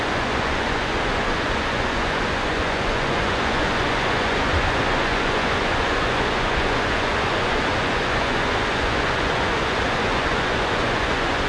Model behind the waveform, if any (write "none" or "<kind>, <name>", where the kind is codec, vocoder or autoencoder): vocoder, Vocos